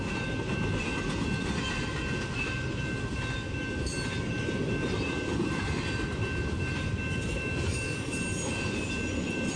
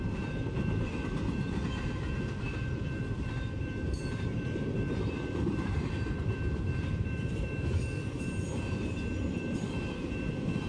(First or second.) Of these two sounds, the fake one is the second